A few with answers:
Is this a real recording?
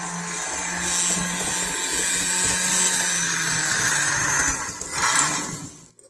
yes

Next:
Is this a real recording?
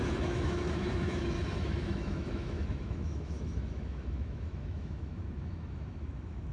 no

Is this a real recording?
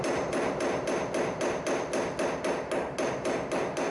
yes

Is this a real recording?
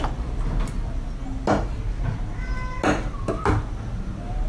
yes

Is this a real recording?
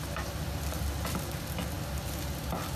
yes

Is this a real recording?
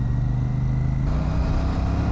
yes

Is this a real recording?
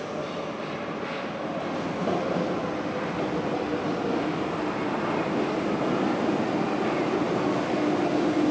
yes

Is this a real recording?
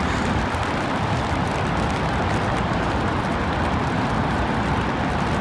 no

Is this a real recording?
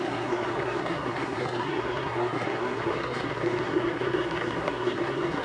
no